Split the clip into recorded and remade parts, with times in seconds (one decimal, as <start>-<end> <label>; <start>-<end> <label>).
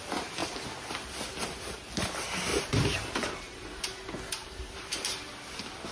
0.0-2.5 recorded; 2.5-3.8 remade; 3.8-4.4 recorded; 4.4-5.4 remade; 5.4-5.9 recorded